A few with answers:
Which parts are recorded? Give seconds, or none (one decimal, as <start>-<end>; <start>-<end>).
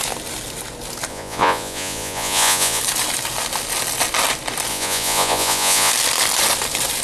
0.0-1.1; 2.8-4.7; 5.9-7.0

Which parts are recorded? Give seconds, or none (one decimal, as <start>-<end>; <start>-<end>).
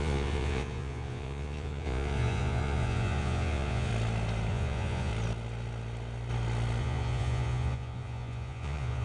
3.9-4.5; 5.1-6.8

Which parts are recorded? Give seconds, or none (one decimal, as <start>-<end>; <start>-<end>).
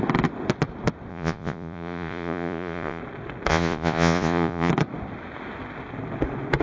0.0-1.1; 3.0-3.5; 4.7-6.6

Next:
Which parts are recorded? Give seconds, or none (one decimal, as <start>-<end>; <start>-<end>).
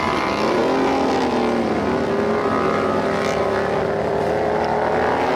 0.0-5.4